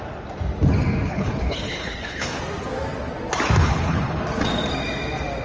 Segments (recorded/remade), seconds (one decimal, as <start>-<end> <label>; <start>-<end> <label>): 0.0-1.1 recorded; 1.1-2.4 remade; 2.4-3.6 recorded; 3.6-4.2 remade; 4.2-5.4 recorded